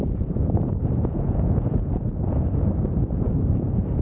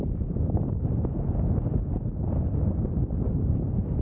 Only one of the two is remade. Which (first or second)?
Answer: first